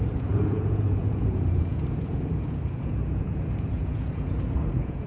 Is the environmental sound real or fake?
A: fake